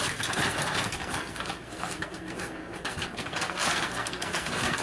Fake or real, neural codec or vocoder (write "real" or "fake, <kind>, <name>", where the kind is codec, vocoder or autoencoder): fake, codec, SNAC